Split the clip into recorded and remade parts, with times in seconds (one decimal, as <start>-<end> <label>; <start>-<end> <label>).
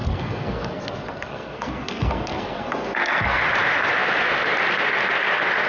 0.0-3.4 remade; 3.4-5.7 recorded